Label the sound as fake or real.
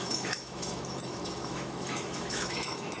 fake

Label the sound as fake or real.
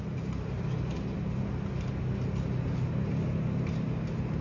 real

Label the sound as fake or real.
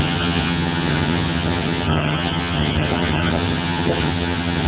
fake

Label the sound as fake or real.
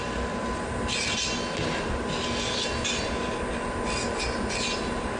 real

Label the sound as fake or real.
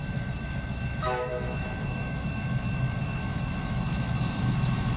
fake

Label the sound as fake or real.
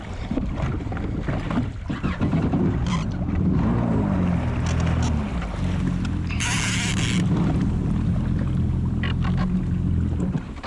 real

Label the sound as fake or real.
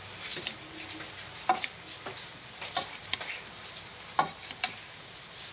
real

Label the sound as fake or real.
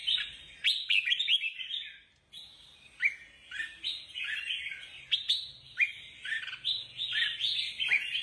real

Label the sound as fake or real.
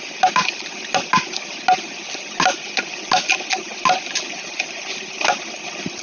real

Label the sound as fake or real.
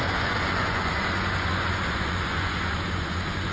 fake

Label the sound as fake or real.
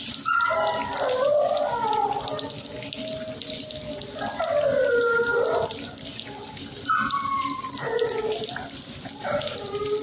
real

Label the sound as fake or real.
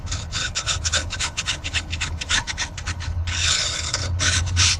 fake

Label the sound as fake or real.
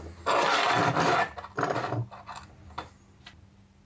real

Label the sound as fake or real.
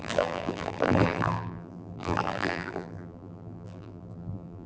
fake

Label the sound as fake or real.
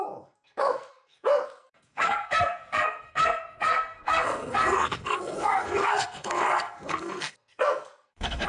fake